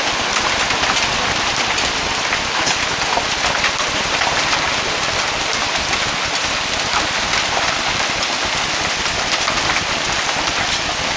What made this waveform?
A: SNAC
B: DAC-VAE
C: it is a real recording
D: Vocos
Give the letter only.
C